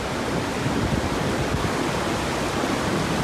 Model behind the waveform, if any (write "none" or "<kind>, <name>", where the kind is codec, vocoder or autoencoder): none